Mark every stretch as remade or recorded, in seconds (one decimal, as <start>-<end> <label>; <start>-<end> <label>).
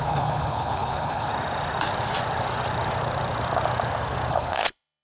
0.0-1.3 remade; 1.3-4.3 recorded; 4.3-5.0 remade